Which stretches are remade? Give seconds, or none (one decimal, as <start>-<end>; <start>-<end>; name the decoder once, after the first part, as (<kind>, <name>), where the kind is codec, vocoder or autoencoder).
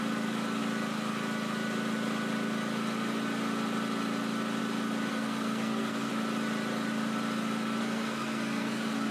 5.1-6.1 (codec, SNAC); 7.8-9.1